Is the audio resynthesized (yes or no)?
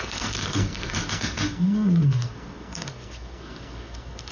yes